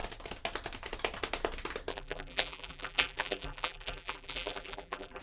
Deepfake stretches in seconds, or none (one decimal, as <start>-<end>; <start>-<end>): 1.9-5.2